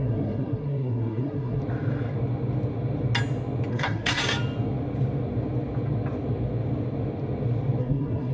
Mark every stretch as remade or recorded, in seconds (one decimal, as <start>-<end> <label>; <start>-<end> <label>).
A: 0.0-1.6 remade; 1.6-3.7 recorded; 3.7-4.2 remade; 4.2-7.8 recorded; 7.8-8.3 remade